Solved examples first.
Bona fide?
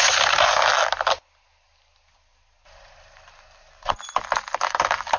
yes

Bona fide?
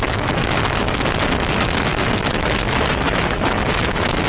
no